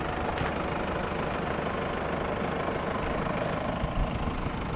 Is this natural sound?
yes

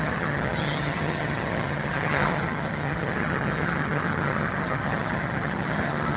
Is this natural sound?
no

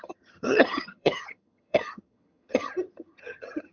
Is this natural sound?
no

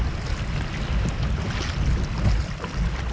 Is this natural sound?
yes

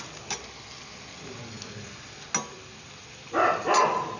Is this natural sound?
yes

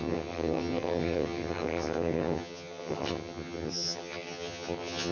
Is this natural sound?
no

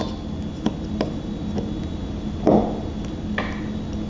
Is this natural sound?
yes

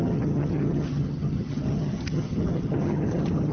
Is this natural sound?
no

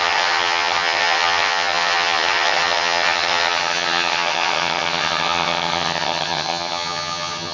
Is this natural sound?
no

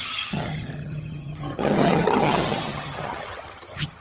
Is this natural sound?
no